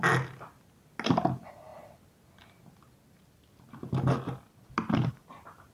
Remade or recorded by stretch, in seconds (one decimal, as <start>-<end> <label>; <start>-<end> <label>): 0.0-5.7 recorded